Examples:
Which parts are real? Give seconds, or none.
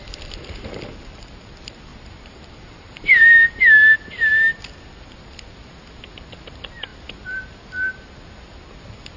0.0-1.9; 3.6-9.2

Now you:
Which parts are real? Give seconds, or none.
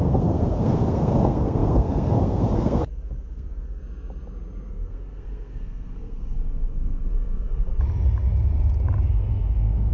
3.8-4.7; 7.7-9.1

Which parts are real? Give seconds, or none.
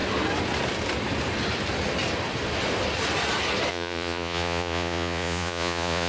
0.0-3.7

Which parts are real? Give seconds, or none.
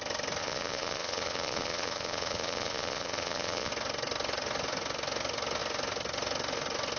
0.0-0.4; 3.7-7.0